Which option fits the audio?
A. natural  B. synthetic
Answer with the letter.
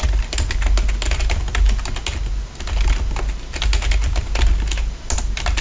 A